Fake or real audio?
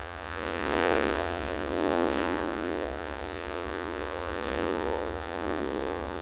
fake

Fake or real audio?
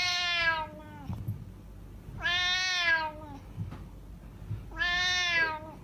real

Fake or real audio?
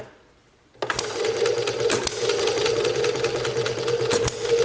real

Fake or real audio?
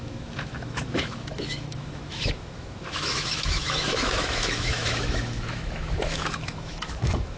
fake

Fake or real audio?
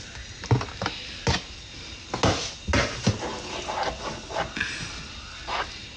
real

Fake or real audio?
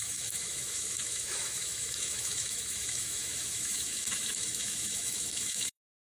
fake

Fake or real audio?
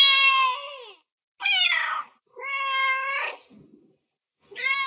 real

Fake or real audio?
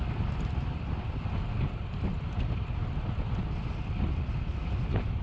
real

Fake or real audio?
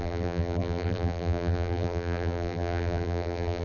fake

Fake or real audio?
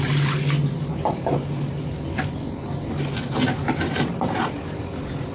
real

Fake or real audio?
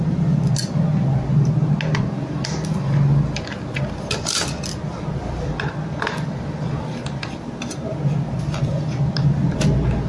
real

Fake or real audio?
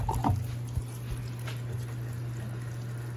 real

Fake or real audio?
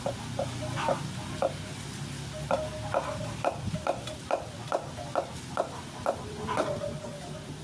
real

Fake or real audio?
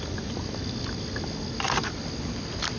real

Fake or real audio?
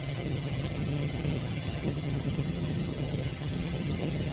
fake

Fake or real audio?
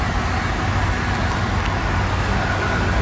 real